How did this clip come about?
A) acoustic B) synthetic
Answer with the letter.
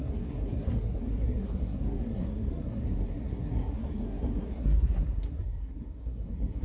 B